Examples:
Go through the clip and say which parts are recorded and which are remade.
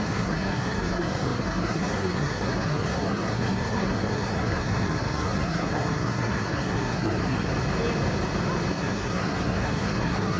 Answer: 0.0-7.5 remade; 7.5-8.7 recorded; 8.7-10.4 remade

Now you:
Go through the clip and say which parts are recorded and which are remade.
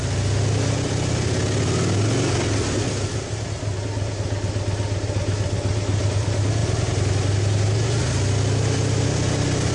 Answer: 0.0-9.7 recorded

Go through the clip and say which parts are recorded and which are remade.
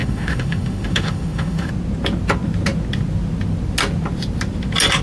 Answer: 0.0-1.7 remade; 1.7-5.0 recorded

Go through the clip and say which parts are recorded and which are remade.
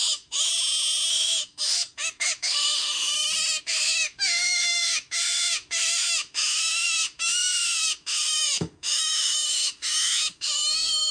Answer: 0.0-0.5 remade; 0.5-1.1 recorded; 1.1-3.1 remade; 3.1-3.6 recorded; 3.6-11.1 remade